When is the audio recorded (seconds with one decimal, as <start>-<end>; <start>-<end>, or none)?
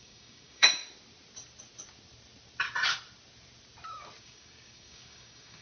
0.8-4.2